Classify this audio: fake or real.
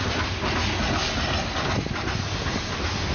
real